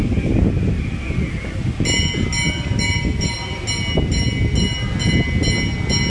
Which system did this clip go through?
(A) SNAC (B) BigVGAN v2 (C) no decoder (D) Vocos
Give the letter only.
C